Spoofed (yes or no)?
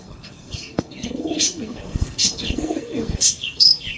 yes